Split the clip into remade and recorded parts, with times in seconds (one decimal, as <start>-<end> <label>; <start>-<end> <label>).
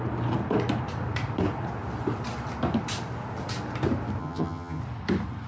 0.0-4.2 recorded; 4.2-4.8 remade; 4.8-5.5 recorded